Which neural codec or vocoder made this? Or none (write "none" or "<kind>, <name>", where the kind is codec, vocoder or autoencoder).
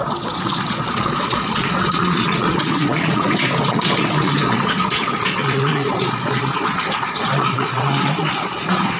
vocoder, Vocos